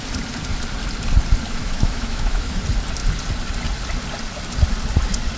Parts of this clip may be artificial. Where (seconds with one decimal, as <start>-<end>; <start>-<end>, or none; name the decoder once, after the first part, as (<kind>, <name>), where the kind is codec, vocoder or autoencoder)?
1.6-2.6 (autoencoder, DAC-VAE)